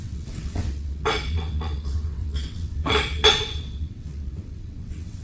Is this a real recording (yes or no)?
no